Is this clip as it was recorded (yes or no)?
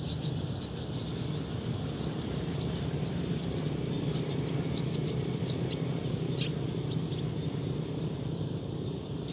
yes